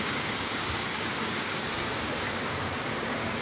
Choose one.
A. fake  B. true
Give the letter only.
A